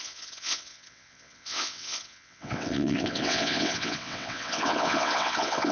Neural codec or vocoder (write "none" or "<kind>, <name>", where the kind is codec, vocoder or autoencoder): vocoder, WaveNeXt